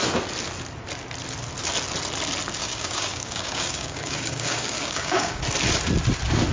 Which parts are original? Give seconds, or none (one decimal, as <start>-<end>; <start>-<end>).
0.0-2.6; 5.4-6.5